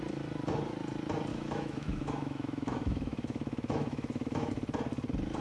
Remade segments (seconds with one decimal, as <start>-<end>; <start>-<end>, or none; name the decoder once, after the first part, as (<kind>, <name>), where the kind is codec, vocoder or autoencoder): 1.3-4.5 (autoencoder, DAC-VAE)